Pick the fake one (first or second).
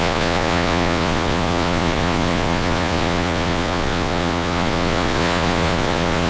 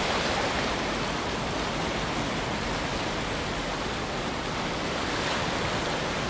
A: first